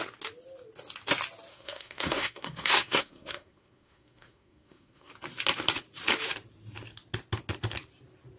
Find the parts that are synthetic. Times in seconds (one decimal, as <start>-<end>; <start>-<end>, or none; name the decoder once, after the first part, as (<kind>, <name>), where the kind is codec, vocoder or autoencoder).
1.5-5.1 (codec, SNAC)